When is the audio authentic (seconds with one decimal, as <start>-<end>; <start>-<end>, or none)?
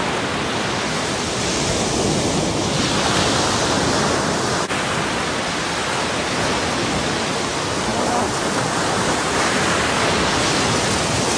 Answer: 0.0-7.9; 10.0-11.4